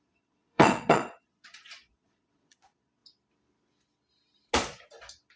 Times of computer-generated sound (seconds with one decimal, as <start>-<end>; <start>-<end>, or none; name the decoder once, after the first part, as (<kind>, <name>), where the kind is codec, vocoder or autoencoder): 0.0-3.0 (vocoder, Vocos)

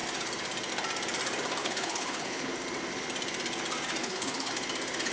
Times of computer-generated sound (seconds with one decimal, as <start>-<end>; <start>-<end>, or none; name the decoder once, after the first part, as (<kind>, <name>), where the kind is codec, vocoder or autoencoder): 1.6-2.5 (codec, HILCodec); 4.0-4.5